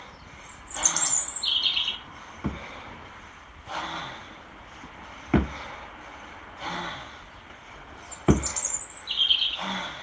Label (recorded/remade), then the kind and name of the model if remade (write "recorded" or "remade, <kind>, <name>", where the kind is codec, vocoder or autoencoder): recorded